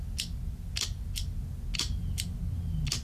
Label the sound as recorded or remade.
recorded